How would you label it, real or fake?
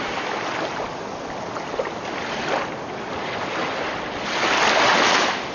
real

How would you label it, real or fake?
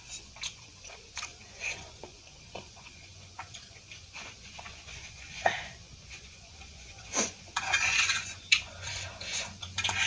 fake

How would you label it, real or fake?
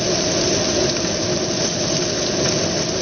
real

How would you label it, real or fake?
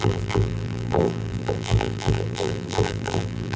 fake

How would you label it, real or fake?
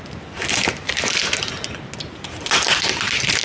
real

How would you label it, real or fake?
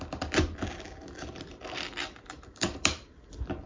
fake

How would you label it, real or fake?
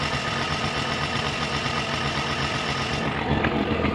real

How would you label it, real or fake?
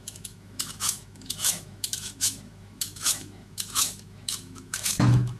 fake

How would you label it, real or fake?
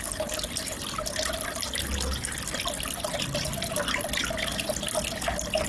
real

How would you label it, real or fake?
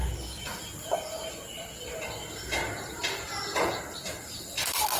real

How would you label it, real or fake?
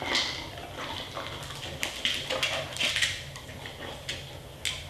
real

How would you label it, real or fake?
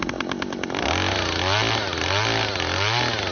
real